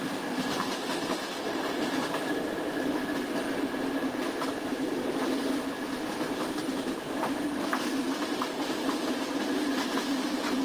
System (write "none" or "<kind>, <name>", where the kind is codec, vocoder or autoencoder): none